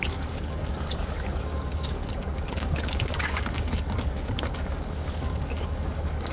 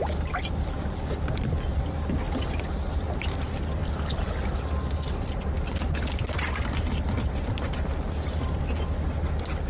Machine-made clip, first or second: first